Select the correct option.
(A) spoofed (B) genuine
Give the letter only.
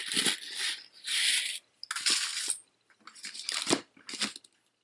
B